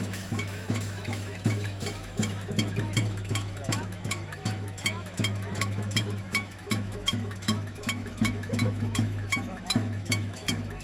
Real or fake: fake